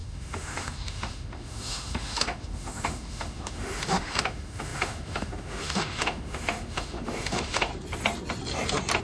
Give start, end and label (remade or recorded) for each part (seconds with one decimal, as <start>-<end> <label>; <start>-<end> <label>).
0.0-7.7 remade; 7.7-9.0 recorded